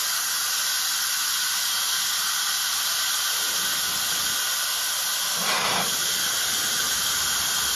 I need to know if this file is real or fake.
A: real